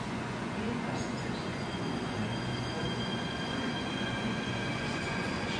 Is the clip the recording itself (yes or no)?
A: no